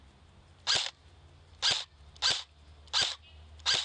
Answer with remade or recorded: recorded